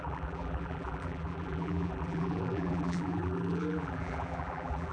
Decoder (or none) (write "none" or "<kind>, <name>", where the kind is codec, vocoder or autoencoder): vocoder, BigVGAN v2